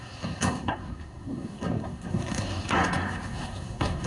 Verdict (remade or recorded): remade